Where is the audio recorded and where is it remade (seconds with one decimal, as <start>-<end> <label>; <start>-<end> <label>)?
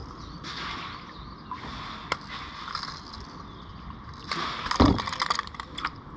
0.0-6.2 recorded